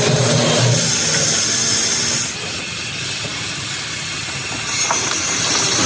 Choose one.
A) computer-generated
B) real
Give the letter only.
B